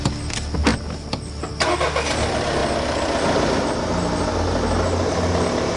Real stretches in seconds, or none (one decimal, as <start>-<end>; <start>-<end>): 0.0-5.8